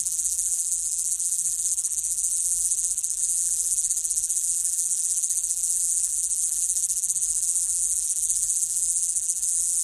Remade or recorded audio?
remade